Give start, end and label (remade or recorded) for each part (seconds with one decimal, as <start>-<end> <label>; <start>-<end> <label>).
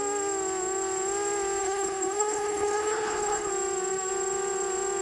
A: 0.0-1.6 recorded; 1.6-3.5 remade; 3.5-5.0 recorded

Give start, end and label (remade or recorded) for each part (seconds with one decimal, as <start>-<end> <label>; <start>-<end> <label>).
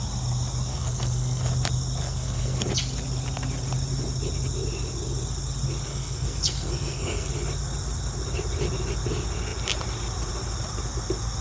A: 0.0-0.7 recorded; 0.7-1.5 remade; 1.5-2.0 recorded; 2.0-2.7 remade; 2.7-5.9 recorded; 5.9-7.3 remade; 7.3-11.4 recorded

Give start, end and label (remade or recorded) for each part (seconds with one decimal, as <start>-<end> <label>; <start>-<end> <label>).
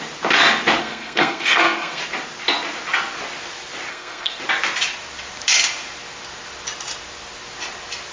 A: 0.0-0.8 recorded; 0.8-2.0 remade; 2.0-3.9 recorded; 3.9-4.4 remade; 4.4-8.1 recorded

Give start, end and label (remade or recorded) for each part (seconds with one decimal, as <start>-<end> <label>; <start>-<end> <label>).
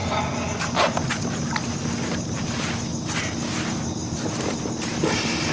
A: 0.0-5.5 recorded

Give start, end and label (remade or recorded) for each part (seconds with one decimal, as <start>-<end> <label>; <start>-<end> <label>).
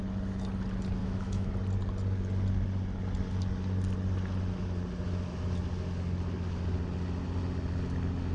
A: 0.0-1.0 recorded; 1.0-1.5 remade; 1.5-8.3 recorded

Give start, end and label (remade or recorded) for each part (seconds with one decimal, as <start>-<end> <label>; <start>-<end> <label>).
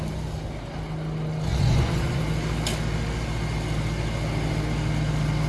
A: 0.0-1.5 recorded; 1.5-2.2 remade; 2.2-5.5 recorded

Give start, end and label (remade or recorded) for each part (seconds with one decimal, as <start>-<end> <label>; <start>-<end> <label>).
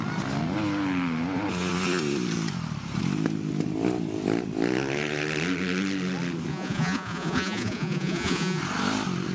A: 0.0-6.5 recorded; 6.5-8.6 remade; 8.6-9.3 recorded